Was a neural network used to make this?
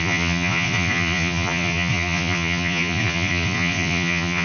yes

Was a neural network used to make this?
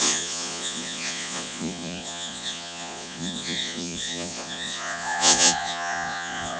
yes